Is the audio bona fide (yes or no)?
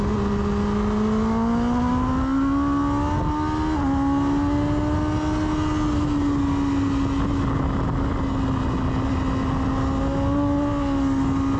yes